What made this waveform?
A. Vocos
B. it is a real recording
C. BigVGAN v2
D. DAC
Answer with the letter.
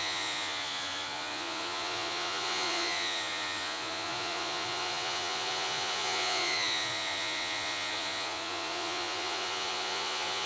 A